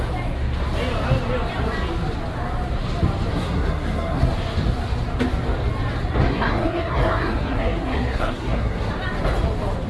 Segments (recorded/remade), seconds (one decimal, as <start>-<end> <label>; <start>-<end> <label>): 0.0-3.3 recorded; 3.3-4.3 remade; 4.3-6.3 recorded; 6.3-8.9 remade; 8.9-9.9 recorded